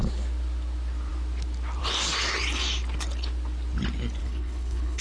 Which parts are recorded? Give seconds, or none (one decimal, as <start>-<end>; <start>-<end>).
0.0-4.2